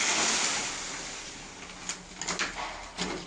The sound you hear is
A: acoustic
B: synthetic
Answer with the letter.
A